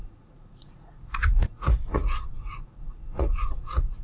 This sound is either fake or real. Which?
fake